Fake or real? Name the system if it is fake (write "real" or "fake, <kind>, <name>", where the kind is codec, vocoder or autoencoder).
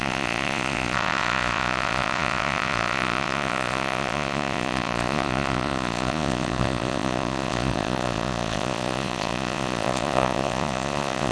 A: fake, vocoder, Vocos